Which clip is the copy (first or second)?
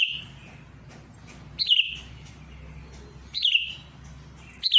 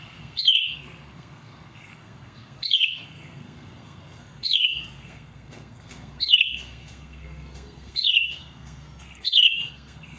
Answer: second